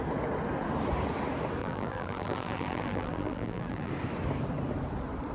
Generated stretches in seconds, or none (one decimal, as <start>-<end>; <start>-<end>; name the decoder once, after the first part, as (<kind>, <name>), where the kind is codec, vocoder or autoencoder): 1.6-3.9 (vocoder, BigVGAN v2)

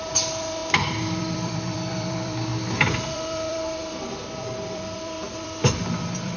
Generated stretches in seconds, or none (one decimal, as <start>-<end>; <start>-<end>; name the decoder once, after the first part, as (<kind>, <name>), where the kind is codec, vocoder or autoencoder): 0.0-0.6 (vocoder, BigVGAN v2); 1.2-6.4

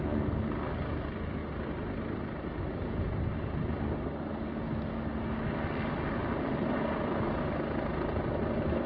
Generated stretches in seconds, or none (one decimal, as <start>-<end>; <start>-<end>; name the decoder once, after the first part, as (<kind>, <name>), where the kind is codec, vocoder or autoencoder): 6.2-7.4 (vocoder, BigVGAN v2)

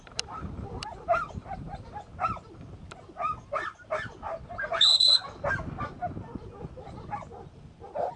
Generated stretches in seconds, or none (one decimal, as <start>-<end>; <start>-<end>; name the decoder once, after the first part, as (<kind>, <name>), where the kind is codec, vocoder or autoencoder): 0.0-2.1 (vocoder, BigVGAN v2); 4.4-5.2; 6.8-8.2

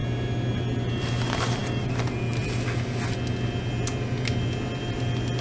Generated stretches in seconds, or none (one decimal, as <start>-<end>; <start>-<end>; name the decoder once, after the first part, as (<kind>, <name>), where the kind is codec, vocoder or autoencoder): 0.9-1.6 (vocoder, BigVGAN v2); 4.8-5.4

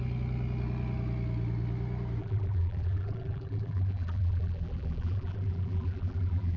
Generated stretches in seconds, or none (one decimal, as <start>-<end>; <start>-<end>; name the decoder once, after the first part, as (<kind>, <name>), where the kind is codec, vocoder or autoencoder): 2.2-6.6 (vocoder, BigVGAN v2)